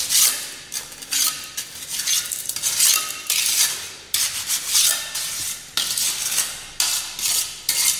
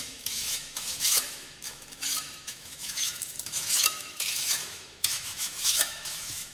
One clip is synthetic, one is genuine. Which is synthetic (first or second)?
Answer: second